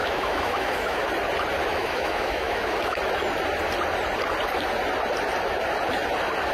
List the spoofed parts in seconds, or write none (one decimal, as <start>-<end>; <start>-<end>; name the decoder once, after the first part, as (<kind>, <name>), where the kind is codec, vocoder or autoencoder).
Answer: 0.0-1.0 (autoencoder, DAC-VAE); 1.7-3.0